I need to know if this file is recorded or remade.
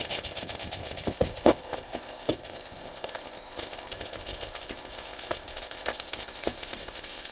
remade